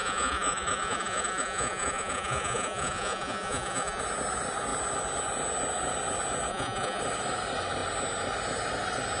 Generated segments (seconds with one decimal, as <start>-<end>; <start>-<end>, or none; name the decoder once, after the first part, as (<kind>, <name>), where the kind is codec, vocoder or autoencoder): 0.0-4.0 (vocoder, Vocos); 6.5-7.0